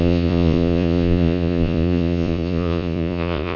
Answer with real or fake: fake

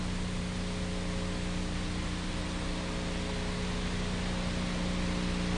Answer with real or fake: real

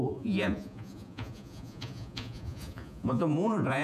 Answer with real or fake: fake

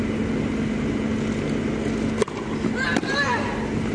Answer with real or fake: real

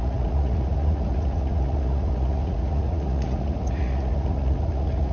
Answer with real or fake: fake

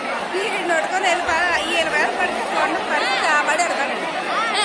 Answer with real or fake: real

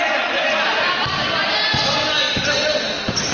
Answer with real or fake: real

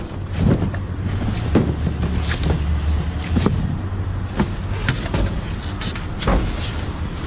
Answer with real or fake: real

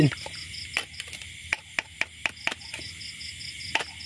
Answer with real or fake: real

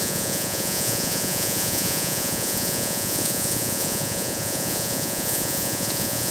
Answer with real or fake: fake